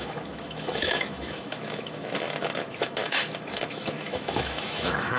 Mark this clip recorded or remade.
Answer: remade